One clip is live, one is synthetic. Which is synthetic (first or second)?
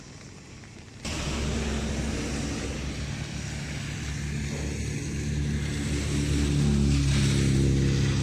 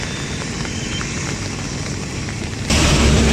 second